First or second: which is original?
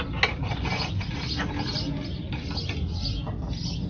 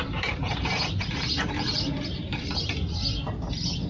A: first